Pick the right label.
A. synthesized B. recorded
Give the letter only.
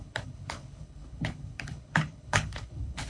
A